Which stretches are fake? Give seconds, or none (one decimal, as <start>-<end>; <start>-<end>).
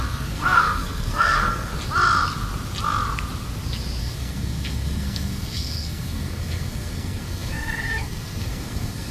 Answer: 0.0-1.7; 4.0-9.1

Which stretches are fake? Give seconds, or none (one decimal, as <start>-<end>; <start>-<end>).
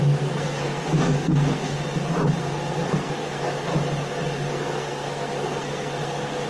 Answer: 0.0-1.8; 2.4-3.7; 4.5-6.5